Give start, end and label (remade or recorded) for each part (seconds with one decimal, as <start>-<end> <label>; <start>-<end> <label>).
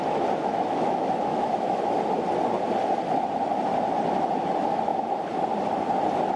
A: 0.0-0.4 recorded; 0.4-0.9 remade; 0.9-1.3 recorded; 1.3-1.9 remade; 1.9-6.4 recorded